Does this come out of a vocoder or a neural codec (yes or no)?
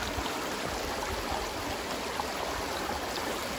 no